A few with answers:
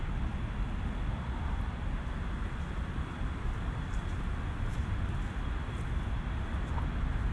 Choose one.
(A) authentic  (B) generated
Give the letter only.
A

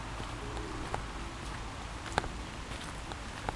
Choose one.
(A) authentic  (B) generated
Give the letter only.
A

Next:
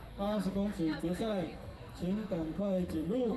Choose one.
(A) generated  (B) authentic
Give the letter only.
A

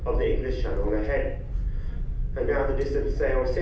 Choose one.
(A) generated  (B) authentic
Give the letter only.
B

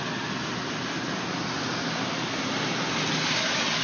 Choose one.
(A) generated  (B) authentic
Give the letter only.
B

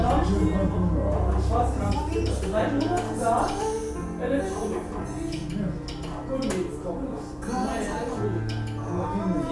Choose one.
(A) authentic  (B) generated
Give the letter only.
A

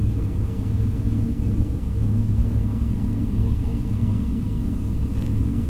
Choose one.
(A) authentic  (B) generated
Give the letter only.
B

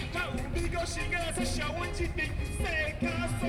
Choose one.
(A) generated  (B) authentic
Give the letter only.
B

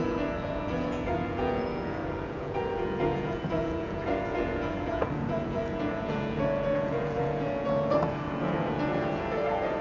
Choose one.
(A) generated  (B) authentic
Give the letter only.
A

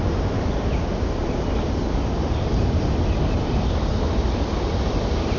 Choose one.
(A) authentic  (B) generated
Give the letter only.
A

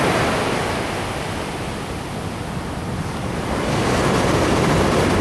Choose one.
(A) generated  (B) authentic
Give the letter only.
B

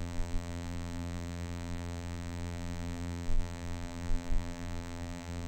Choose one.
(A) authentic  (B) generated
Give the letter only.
B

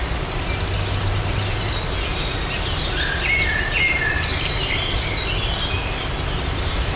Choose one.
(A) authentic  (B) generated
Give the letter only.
A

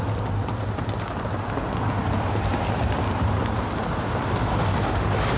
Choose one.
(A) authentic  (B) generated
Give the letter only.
A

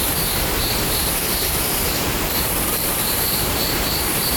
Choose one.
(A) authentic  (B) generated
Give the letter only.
B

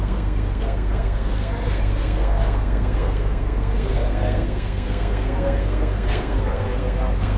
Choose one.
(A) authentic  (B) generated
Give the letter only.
B